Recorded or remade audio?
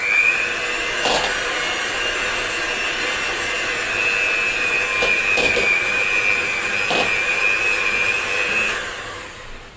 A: recorded